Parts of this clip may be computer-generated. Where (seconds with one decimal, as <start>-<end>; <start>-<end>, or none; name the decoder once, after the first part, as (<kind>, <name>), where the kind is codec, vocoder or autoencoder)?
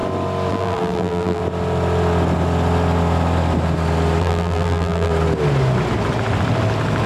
0.5-1.4 (vocoder, BigVGAN v2); 4.2-5.1